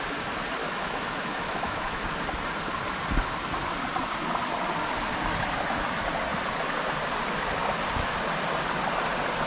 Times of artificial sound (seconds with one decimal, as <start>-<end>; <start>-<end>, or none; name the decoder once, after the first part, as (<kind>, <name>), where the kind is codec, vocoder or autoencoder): 0.6-2.0 (autoencoder, DAC-VAE)